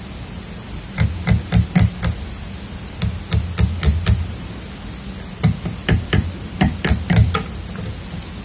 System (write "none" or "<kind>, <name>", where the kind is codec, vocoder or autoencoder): none